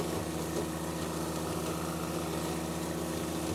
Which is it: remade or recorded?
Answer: recorded